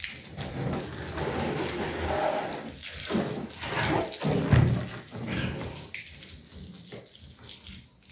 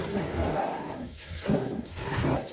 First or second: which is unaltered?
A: first